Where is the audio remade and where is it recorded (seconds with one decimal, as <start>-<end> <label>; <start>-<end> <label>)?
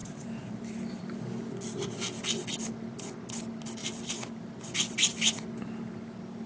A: 0.0-1.2 remade; 1.2-3.8 recorded; 3.8-5.5 remade; 5.5-6.5 recorded